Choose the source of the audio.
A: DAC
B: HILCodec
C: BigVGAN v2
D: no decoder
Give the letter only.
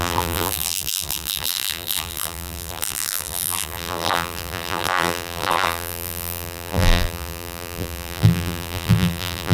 C